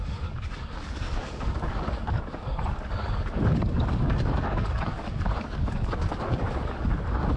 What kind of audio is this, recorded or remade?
remade